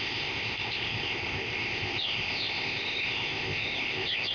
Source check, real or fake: fake